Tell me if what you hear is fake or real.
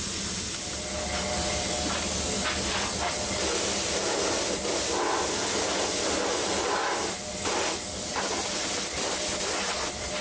real